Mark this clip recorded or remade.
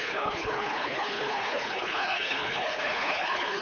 remade